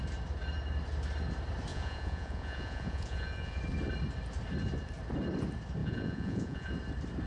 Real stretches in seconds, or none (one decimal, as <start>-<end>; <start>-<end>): 0.0-1.7; 3.6-5.8; 6.7-7.3